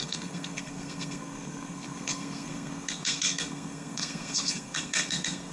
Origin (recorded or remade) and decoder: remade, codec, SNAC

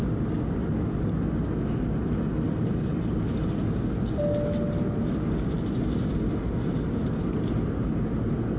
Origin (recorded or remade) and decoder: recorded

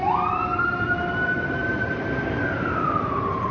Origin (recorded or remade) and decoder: remade, vocoder, BigVGAN v2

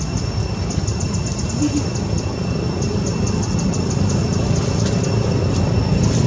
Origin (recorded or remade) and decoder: recorded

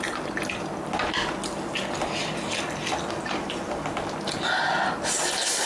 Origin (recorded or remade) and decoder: recorded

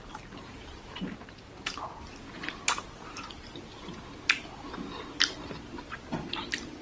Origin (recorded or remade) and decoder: recorded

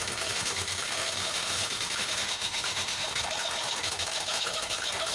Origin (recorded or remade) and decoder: remade, autoencoder, DAC-VAE